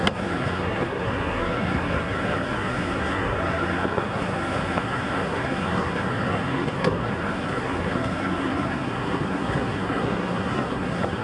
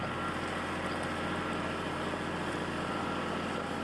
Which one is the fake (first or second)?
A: first